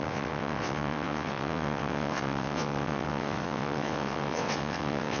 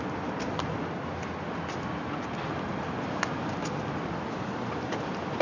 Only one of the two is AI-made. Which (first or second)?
first